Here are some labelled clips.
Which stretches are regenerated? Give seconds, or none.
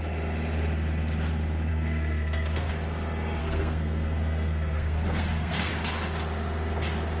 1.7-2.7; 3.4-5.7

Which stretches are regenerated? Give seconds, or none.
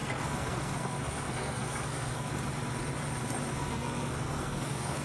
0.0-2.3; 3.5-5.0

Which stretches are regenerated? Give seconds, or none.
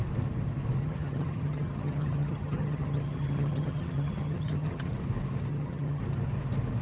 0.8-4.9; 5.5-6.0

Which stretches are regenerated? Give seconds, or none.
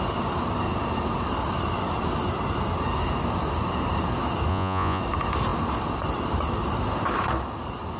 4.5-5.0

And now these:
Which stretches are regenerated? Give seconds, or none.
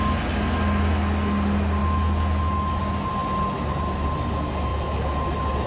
none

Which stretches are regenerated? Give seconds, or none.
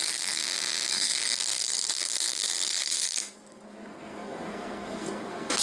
0.0-0.4; 0.9-5.6